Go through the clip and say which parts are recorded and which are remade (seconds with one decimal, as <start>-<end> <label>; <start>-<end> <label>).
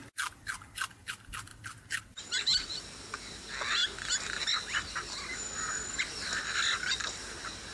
0.0-7.7 recorded